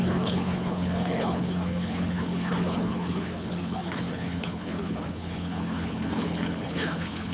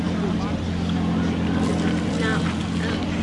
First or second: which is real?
second